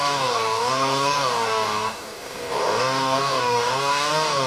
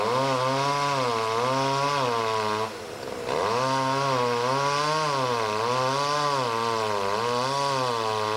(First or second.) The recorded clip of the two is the second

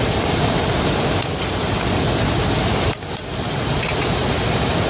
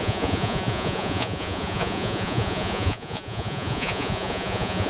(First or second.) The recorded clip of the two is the first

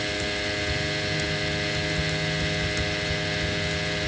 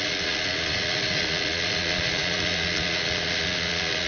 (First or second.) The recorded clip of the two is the first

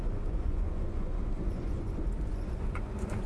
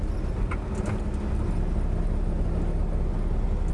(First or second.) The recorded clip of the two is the second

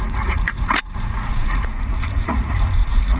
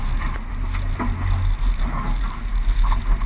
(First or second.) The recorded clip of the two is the second